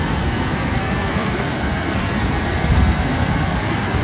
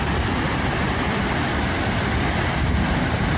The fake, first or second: first